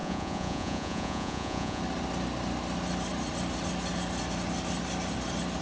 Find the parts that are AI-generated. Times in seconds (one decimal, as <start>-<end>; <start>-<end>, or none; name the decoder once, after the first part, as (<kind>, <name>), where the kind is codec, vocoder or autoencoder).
0.0-1.8 (vocoder, Vocos)